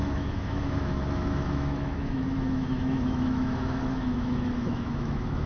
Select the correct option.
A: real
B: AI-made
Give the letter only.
B